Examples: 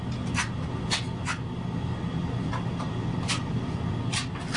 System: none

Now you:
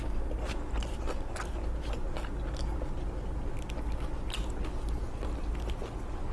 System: none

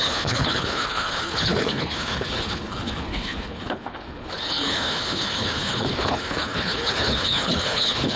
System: codec, HILCodec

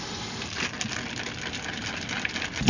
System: none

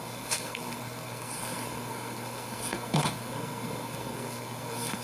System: codec, SNAC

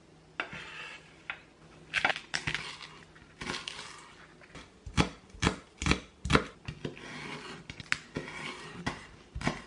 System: none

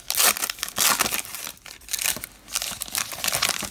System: none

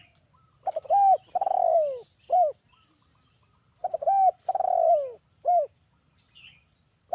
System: none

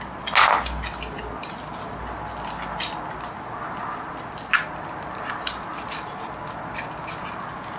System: none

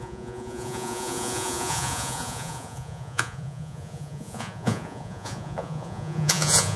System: vocoder, Vocos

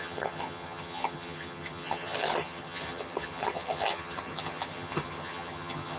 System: vocoder, HiFi-GAN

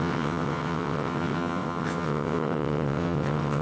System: vocoder, WaveNeXt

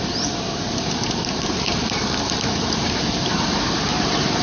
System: vocoder, BigVGAN v2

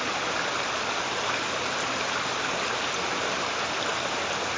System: none